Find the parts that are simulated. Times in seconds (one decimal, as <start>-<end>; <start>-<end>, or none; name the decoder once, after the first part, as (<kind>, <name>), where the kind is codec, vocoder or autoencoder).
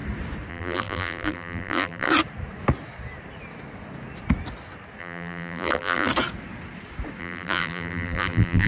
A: 0.5-2.1 (vocoder, BigVGAN v2); 5.0-6.1; 7.2-8.7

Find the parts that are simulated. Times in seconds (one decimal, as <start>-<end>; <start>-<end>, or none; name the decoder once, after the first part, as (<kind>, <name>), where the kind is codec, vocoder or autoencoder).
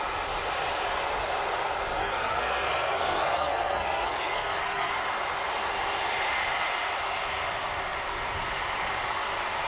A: 2.0-4.9 (codec, SNAC)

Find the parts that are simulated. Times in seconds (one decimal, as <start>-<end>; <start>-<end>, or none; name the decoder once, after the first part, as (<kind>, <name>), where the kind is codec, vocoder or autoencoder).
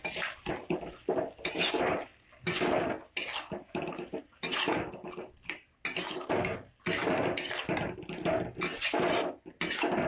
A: none